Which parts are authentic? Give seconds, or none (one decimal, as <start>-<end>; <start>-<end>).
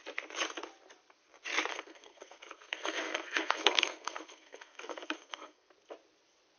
0.0-1.7; 5.7-6.6